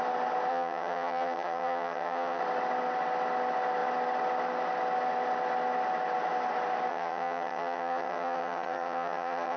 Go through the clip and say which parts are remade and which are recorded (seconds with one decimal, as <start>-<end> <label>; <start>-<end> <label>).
0.0-0.5 recorded; 0.5-2.4 remade; 2.4-6.9 recorded; 6.9-9.6 remade